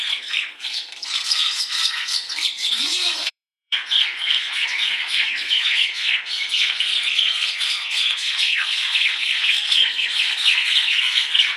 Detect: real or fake fake